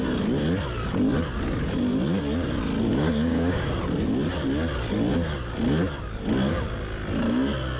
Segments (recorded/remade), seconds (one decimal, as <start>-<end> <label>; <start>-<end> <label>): 0.0-2.9 recorded; 2.9-3.8 remade; 3.8-7.8 recorded

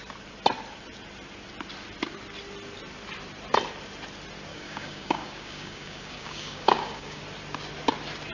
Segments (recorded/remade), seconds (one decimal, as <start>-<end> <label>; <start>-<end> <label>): 0.0-4.5 recorded; 4.5-7.2 remade; 7.2-8.3 recorded

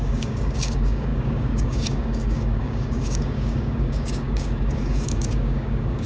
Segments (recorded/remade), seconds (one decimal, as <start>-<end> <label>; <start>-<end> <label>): 0.0-6.1 remade

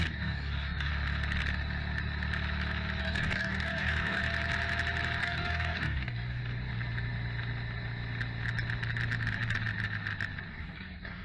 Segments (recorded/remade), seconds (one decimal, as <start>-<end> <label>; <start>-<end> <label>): 0.0-0.9 remade; 0.9-3.0 recorded; 3.0-4.2 remade; 4.2-5.2 recorded; 5.2-6.4 remade; 6.4-10.5 recorded; 10.5-11.2 remade

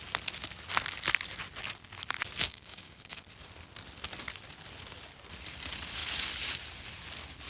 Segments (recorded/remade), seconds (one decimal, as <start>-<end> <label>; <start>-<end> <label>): 0.0-2.4 recorded; 2.4-3.2 remade; 3.2-7.5 recorded